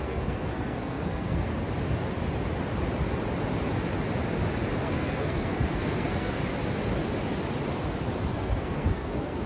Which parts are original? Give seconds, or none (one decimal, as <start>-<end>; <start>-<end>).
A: 1.5-4.8; 6.4-8.3